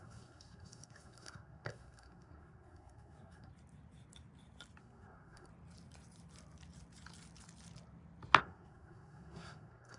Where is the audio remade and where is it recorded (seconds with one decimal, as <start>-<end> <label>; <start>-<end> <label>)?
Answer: 0.0-3.5 remade; 3.5-4.8 recorded; 4.8-5.5 remade; 5.5-8.4 recorded; 8.4-10.0 remade

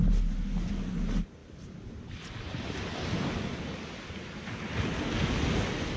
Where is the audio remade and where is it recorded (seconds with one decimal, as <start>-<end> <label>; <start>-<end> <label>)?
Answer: 0.0-1.4 recorded; 1.4-4.4 remade; 4.4-6.0 recorded

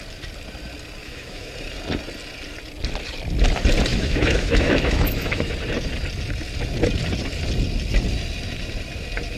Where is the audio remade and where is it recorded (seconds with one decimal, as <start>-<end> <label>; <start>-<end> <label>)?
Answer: 0.0-1.0 recorded; 1.0-1.5 remade; 1.5-3.9 recorded; 3.9-5.5 remade; 5.5-9.4 recorded